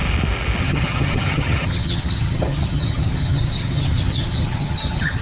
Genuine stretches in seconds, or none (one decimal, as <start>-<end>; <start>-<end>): 0.0-0.6